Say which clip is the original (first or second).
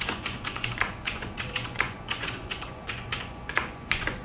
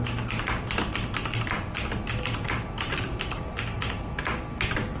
second